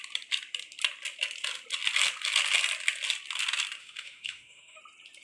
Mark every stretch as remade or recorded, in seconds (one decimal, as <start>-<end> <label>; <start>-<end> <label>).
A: 0.0-3.8 recorded; 3.8-4.8 remade; 4.8-5.2 recorded